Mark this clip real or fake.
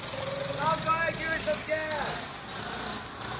real